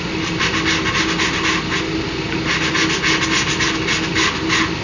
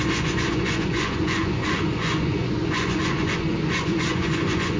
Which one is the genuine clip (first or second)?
first